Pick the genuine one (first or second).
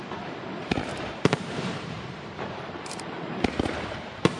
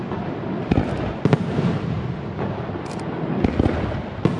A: second